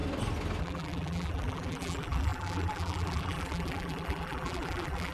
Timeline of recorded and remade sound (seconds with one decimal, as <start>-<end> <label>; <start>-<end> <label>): 0.0-0.6 recorded; 0.6-5.1 remade